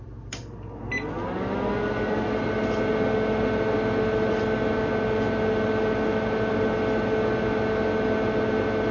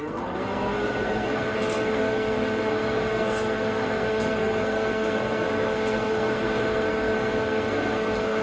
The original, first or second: first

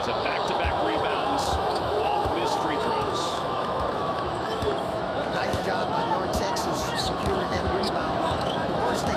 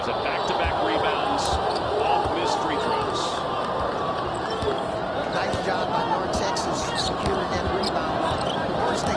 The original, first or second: second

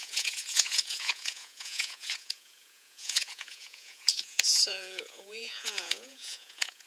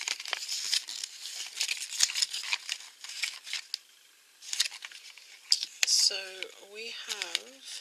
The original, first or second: second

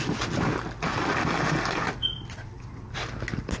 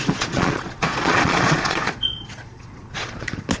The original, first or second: first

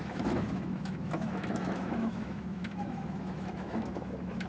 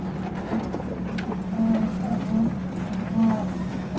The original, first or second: second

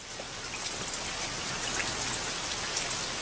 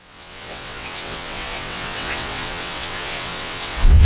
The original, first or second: first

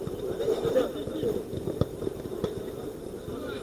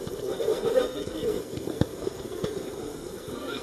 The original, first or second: first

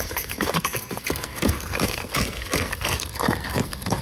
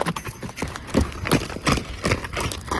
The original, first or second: second